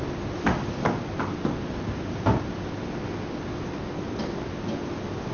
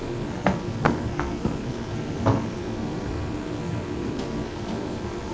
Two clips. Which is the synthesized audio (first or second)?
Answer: second